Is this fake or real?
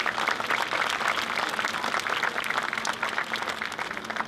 real